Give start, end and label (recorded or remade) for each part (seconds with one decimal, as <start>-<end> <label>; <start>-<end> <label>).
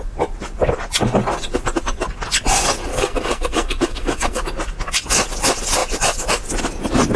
0.0-2.9 recorded; 2.9-4.4 remade; 4.4-7.2 recorded